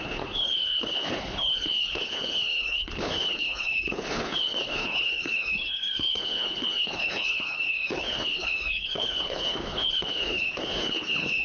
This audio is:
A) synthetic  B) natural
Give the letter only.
A